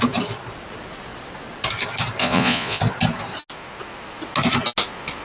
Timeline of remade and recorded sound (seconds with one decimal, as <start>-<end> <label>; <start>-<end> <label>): 0.0-2.2 recorded; 2.2-2.8 remade; 2.8-5.2 recorded